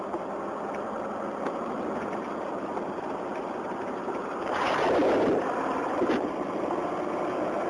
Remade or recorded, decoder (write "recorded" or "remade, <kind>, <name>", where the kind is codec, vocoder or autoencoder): recorded